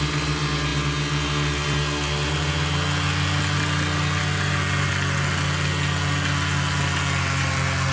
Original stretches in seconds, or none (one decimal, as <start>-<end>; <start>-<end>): 0.0-7.9